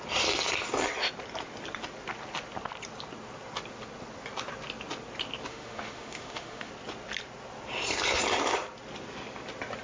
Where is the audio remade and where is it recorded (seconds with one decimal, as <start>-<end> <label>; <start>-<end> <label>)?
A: 0.0-5.5 recorded; 5.5-6.7 remade; 6.7-9.8 recorded